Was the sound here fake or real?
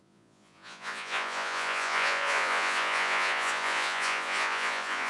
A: fake